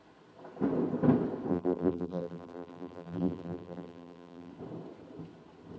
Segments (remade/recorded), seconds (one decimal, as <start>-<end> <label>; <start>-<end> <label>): 0.0-1.5 recorded; 1.5-4.5 remade; 4.5-5.8 recorded